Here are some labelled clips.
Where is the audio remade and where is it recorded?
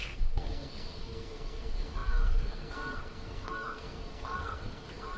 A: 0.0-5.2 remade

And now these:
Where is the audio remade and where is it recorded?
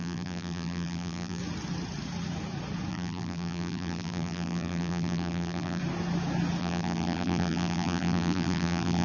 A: 0.0-1.4 remade; 1.4-2.9 recorded; 2.9-5.8 remade; 5.8-6.6 recorded; 6.6-9.0 remade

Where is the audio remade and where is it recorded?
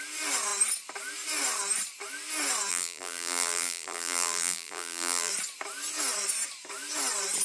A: 0.0-2.7 recorded; 2.7-5.3 remade; 5.3-7.4 recorded